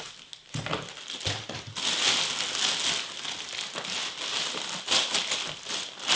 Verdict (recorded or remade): recorded